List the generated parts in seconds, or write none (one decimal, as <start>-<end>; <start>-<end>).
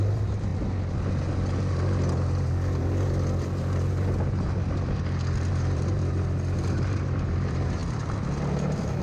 0.0-0.5; 5.5-6.0; 6.7-7.8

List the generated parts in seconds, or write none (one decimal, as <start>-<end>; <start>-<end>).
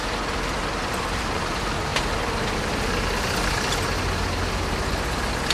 1.2-1.9